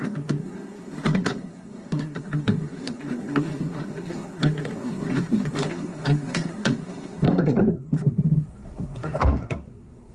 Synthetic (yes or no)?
yes